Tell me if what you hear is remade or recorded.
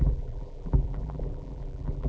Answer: remade